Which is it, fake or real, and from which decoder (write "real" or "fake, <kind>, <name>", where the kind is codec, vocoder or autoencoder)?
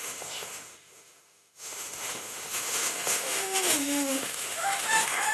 fake, autoencoder, DAC-VAE